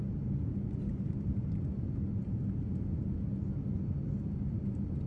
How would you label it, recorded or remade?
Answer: recorded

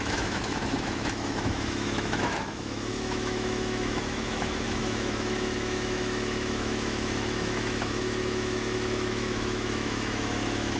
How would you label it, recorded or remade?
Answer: remade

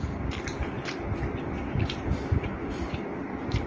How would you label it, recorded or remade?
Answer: recorded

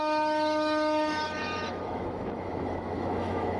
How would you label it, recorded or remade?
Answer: remade